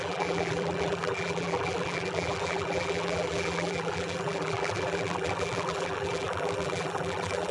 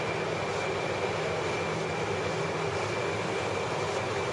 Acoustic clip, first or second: second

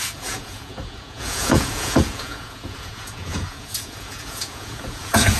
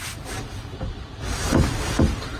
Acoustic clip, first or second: second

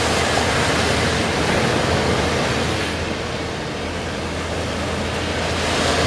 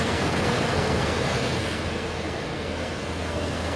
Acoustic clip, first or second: first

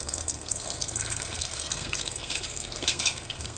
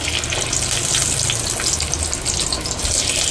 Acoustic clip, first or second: second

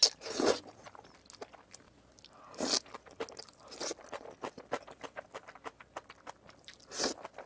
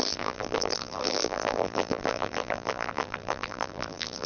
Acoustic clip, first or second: first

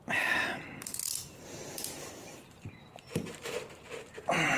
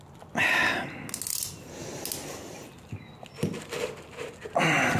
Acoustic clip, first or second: second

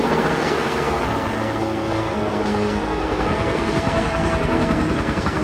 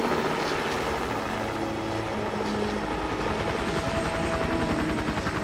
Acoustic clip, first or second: second